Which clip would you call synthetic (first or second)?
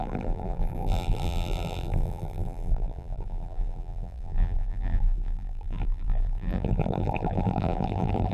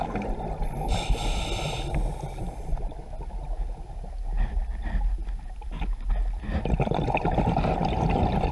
first